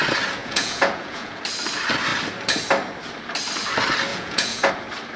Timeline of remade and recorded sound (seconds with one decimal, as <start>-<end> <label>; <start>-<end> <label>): 0.0-0.4 recorded; 0.4-1.4 remade; 1.4-4.1 recorded; 4.1-4.7 remade; 4.7-5.2 recorded